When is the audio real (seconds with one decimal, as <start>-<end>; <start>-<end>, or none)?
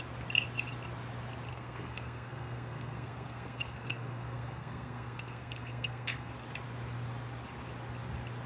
0.0-1.5; 6.3-8.5